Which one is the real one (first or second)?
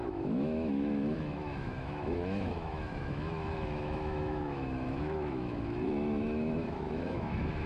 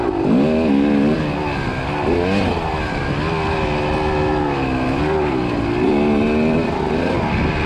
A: second